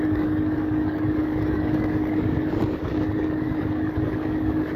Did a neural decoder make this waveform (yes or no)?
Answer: yes